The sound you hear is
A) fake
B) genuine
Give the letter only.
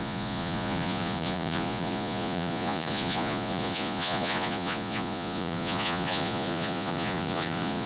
A